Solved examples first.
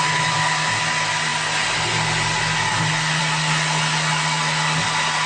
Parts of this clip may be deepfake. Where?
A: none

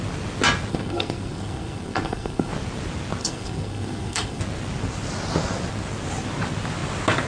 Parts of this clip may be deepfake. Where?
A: 0.7-2.5 (codec, SNAC); 3.2-4.4

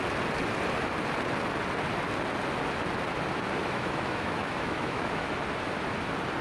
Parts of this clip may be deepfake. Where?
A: 3.6-5.3 (autoencoder, DAC-VAE)

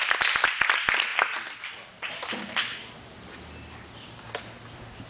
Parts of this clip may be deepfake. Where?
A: 1.1-4.2 (vocoder, BigVGAN v2)

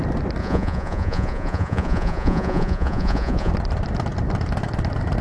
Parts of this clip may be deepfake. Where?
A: 0.4-3.5 (vocoder, Vocos)

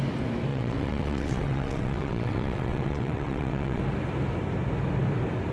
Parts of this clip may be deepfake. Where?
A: 0.5-3.8 (vocoder, WaveNeXt)

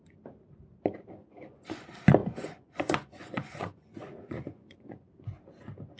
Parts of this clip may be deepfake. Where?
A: 1.2-1.8 (vocoder, Vocos); 2.2-5.1

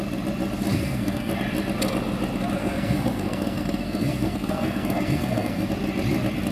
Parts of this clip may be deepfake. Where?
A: 0.7-1.3 (codec, SNAC); 2.6-5.7